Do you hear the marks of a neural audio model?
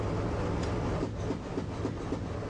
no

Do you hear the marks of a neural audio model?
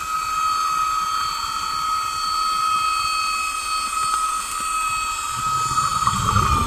no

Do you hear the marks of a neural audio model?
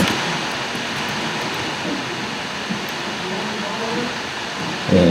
no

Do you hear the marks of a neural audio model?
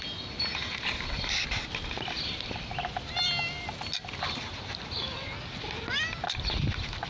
no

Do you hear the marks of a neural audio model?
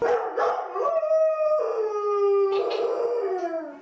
no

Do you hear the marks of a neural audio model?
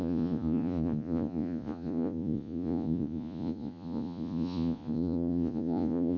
yes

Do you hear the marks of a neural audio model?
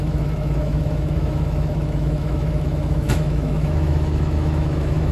yes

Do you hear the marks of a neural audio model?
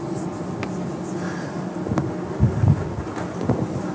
no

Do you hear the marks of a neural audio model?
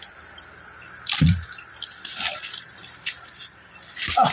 yes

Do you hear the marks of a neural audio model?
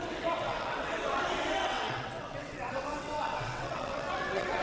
yes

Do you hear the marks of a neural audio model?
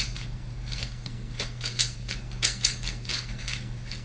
yes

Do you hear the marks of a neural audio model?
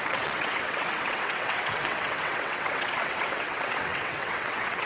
yes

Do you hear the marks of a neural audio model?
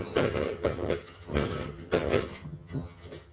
yes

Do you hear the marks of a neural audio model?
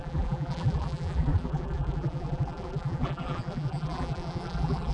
yes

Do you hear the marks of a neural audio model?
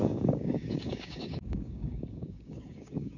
yes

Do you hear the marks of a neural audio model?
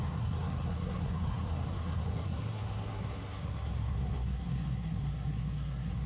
yes